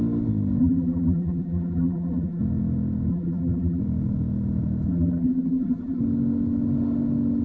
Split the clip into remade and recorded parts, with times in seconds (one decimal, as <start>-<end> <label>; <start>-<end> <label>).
0.0-0.6 recorded; 0.6-2.4 remade; 2.4-3.1 recorded; 3.1-3.8 remade; 3.8-4.9 recorded; 4.9-6.0 remade; 6.0-7.4 recorded